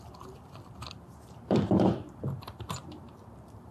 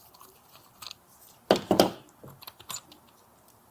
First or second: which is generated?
first